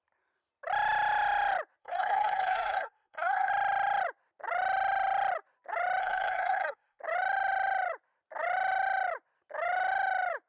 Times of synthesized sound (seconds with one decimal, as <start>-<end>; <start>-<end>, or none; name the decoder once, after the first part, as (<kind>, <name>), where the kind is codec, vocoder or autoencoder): 1.8-3.5 (codec, SNAC); 6.0-7.0